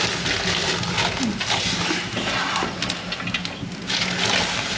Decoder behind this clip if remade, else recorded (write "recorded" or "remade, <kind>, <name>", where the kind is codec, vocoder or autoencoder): recorded